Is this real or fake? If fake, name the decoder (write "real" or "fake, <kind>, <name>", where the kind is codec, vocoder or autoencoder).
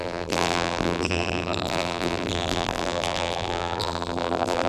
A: fake, vocoder, BigVGAN v2